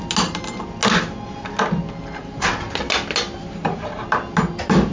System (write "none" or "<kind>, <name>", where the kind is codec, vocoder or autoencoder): none